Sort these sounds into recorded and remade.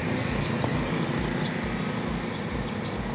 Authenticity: recorded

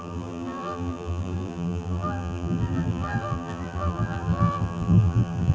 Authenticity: remade